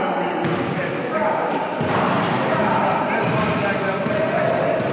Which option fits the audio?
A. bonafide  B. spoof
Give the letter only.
A